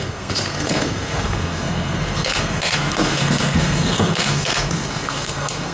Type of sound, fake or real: fake